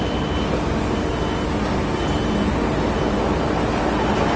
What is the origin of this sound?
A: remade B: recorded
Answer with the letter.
B